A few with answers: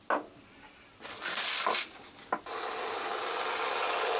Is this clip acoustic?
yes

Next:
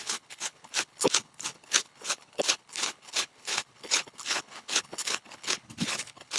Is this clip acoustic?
no